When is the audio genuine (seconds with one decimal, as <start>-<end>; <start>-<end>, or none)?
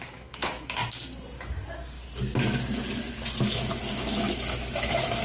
0.8-3.9